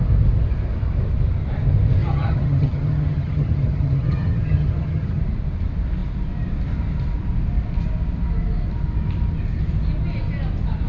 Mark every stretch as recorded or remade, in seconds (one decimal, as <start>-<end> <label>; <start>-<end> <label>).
0.0-2.0 recorded; 2.0-5.2 remade; 5.2-10.9 recorded